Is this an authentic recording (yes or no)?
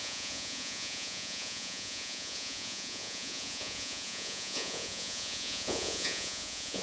no